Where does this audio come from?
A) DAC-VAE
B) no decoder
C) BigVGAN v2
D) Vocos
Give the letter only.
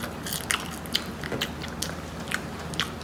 B